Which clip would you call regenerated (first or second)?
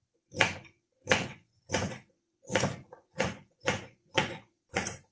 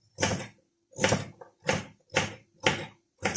first